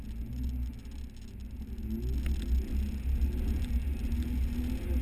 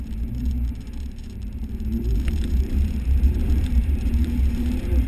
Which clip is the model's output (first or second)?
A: second